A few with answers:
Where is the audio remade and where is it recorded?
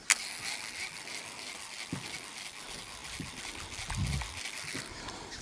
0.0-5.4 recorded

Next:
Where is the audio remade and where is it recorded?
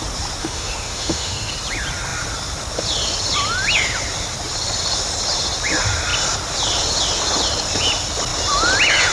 0.0-0.4 recorded; 0.4-1.5 remade; 1.5-9.1 recorded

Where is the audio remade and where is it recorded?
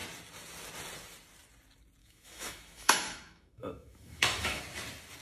0.0-2.0 recorded; 2.0-4.6 remade; 4.6-5.2 recorded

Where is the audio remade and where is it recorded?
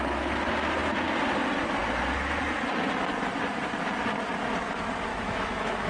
0.0-5.1 recorded; 5.1-5.9 remade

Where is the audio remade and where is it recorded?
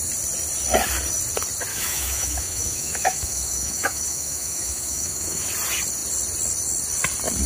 0.0-1.7 recorded; 1.7-5.5 remade; 5.5-7.5 recorded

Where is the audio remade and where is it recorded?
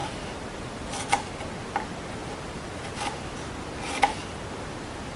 0.0-5.2 recorded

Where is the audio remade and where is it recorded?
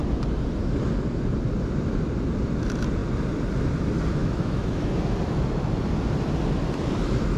0.0-4.2 recorded; 4.2-5.0 remade; 5.0-7.4 recorded